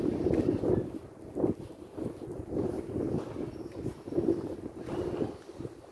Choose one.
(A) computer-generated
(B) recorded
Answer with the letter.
B